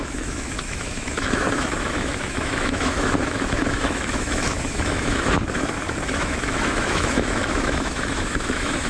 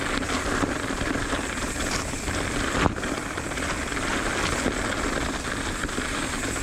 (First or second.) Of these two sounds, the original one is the second